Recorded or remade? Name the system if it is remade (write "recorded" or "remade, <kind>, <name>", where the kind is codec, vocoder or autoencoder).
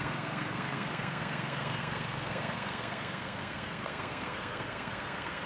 remade, codec, SNAC